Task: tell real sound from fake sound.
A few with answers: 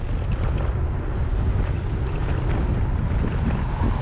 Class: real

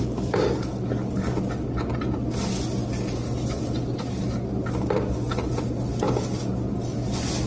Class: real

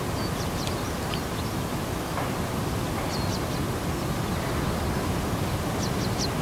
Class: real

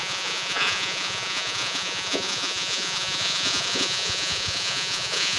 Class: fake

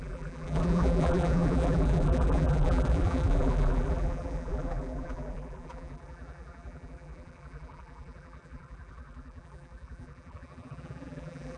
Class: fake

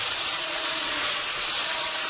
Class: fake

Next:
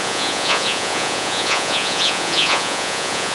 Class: fake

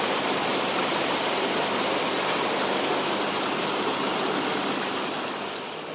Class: real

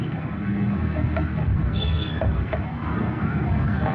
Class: fake